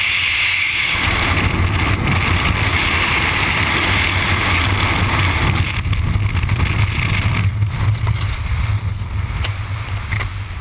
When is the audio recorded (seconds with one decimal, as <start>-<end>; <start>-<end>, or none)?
0.0-2.7; 3.9-10.6